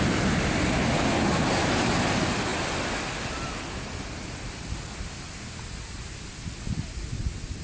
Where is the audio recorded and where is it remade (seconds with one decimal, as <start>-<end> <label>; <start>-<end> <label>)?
0.0-7.6 recorded